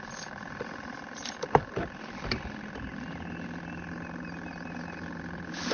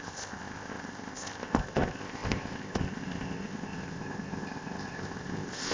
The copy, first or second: second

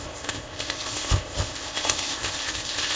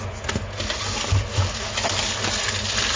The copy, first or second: first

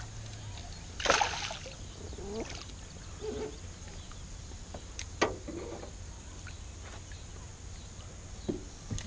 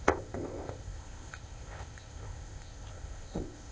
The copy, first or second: second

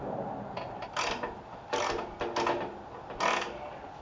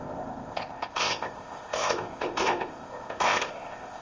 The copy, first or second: second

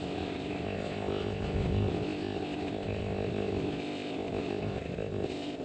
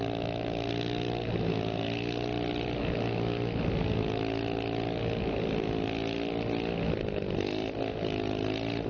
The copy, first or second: first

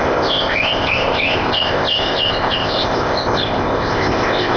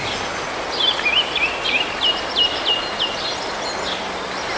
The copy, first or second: first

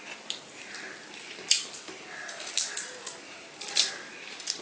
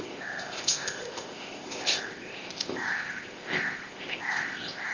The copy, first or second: second